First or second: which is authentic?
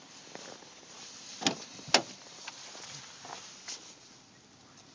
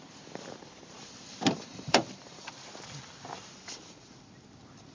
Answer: first